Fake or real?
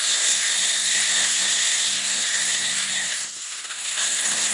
fake